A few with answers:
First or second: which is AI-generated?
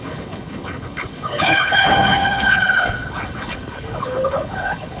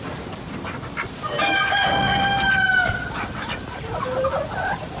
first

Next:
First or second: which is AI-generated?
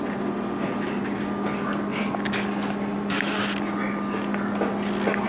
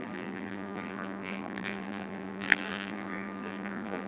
second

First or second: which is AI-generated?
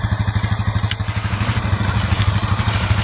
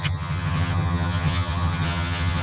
second